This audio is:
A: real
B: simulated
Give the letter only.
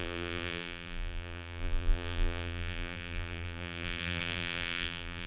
B